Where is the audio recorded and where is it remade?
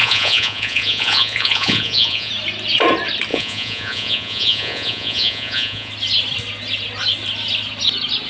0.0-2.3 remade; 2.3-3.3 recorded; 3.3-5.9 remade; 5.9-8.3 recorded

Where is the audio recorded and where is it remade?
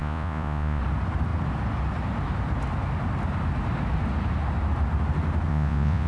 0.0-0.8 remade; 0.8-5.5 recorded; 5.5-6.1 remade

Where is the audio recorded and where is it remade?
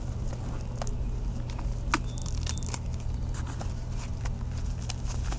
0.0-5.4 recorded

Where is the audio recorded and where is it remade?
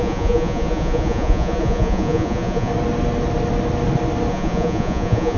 0.0-2.7 remade; 2.7-4.3 recorded; 4.3-5.4 remade